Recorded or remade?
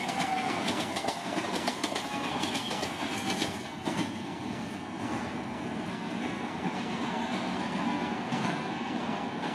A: remade